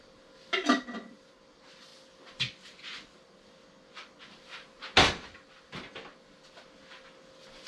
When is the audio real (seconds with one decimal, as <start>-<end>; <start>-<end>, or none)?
0.0-7.7